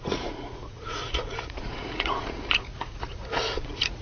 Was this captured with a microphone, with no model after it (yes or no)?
no